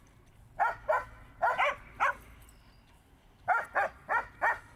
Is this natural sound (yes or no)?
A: yes